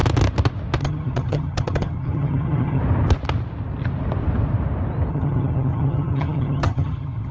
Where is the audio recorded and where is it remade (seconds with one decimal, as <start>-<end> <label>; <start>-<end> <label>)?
0.0-0.8 recorded; 0.8-2.8 remade; 2.8-5.1 recorded; 5.1-7.3 remade